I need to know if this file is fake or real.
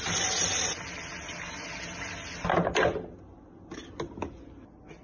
real